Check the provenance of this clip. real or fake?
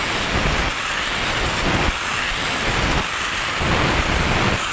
real